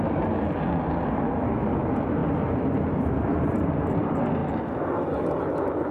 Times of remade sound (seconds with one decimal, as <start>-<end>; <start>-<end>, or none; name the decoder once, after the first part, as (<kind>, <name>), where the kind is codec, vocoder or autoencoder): 0.0-4.4 (vocoder, BigVGAN v2)

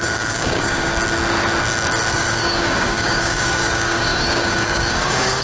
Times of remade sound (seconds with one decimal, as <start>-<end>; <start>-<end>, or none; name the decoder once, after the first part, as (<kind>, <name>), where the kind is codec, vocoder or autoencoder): 0.0-0.9 (codec, DAC); 2.1-5.4

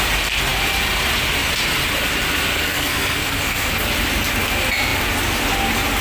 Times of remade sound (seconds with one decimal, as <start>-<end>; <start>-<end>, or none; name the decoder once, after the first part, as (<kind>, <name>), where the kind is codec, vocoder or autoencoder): 2.5-3.7 (codec, SNAC)

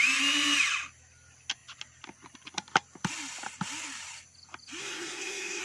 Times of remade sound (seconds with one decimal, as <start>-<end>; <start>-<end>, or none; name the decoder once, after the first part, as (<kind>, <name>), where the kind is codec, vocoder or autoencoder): 4.8-5.6 (codec, SNAC)

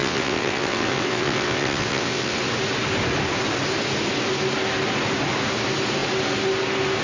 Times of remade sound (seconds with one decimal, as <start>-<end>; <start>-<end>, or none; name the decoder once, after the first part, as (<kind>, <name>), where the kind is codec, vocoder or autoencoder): 0.0-2.4 (vocoder, WaveNeXt)

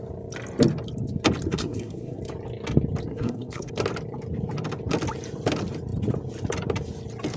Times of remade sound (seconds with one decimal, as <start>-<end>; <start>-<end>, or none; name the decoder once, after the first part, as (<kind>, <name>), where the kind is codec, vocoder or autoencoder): 1.5-2.2 (codec, SNAC); 3.1-3.7